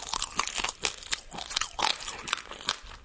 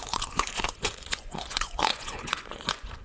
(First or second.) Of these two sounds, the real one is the first